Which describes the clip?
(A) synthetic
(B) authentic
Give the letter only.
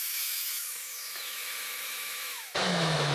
A